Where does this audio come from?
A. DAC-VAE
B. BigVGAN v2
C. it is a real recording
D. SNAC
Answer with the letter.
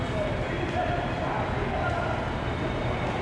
B